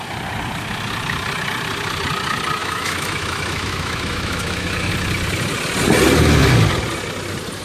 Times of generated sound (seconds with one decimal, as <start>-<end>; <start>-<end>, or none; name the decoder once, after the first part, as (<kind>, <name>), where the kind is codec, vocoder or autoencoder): 2.6-4.9 (autoencoder, DAC-VAE)